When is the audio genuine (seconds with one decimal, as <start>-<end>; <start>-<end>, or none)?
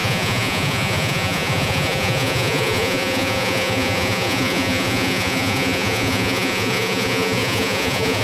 none